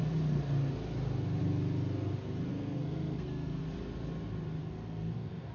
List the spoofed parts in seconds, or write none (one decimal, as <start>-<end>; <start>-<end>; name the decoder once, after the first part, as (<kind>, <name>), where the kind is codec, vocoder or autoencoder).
2.5-3.6 (codec, SNAC); 4.6-5.5